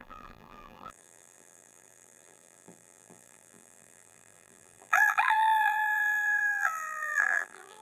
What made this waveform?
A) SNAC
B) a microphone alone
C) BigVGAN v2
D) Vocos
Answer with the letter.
C